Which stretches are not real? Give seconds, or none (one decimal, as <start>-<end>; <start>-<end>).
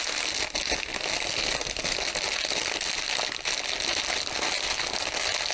0.9-1.7